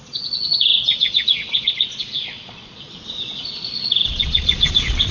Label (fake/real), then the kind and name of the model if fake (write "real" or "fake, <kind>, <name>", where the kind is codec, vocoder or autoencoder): fake, vocoder, Vocos